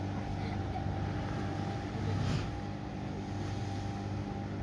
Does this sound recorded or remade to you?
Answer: recorded